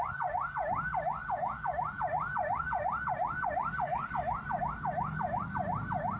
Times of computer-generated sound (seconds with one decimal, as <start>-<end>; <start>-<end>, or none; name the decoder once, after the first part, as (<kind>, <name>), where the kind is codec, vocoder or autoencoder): none